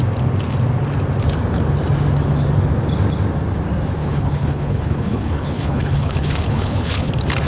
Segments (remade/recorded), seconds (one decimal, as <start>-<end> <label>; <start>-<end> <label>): 0.0-4.0 recorded; 4.0-7.1 remade; 7.1-7.5 recorded